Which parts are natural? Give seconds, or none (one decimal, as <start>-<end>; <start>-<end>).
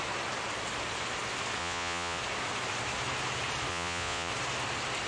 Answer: 0.0-1.6; 2.2-3.7; 4.3-5.1